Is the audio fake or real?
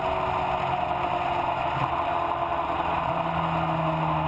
real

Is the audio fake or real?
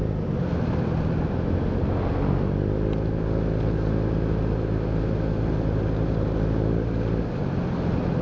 real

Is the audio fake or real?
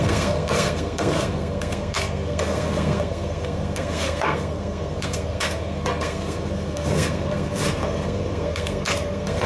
fake